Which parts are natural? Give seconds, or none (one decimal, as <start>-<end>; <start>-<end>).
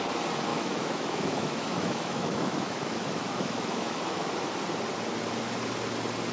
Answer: 0.0-0.5; 4.3-6.3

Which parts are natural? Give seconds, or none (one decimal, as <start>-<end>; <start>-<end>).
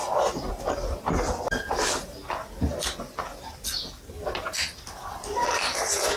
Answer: 0.0-6.2